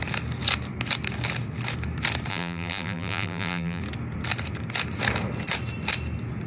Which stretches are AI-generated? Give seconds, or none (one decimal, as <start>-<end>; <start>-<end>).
2.3-3.8